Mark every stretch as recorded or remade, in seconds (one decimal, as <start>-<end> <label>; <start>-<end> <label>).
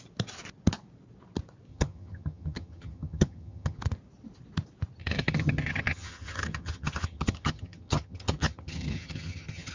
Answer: 0.0-1.7 recorded; 1.7-3.8 remade; 3.8-5.0 recorded; 5.0-9.7 remade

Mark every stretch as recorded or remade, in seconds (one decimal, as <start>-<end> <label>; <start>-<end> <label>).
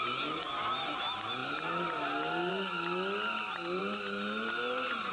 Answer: 0.0-5.1 recorded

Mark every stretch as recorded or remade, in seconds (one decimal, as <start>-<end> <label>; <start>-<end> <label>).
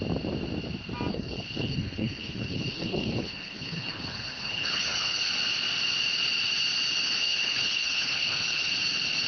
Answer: 0.0-1.1 recorded; 1.1-5.3 remade; 5.3-7.2 recorded; 7.2-8.7 remade; 8.7-9.3 recorded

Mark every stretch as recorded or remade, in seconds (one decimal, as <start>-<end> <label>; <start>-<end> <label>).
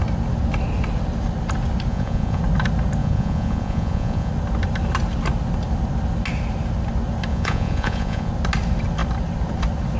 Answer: 0.0-1.9 recorded; 1.9-2.4 remade; 2.4-3.0 recorded; 3.0-4.3 remade; 4.3-7.3 recorded; 7.3-8.3 remade; 8.3-10.0 recorded